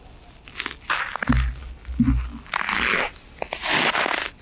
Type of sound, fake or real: real